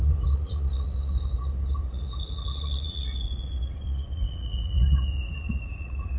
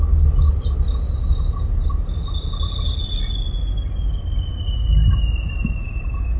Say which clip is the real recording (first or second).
second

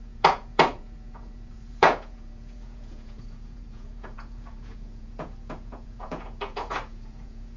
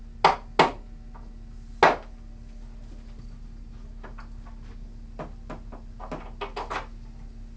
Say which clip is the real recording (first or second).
second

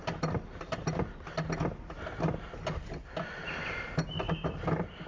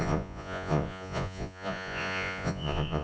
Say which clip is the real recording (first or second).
first